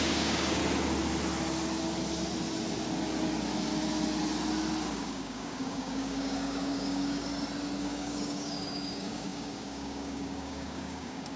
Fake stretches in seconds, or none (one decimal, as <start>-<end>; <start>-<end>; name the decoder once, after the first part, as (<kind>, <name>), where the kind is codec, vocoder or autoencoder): 0.0-0.6 (codec, DAC); 4.9-7.3; 7.8-11.4